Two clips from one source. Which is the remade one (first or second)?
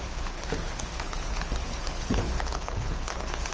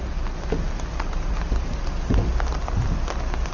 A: first